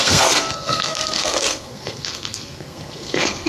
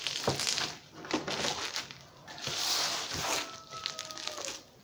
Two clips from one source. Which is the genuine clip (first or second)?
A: second